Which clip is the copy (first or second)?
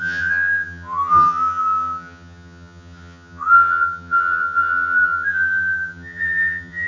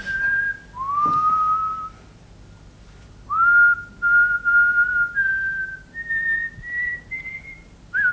first